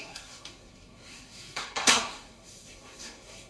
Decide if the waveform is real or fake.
fake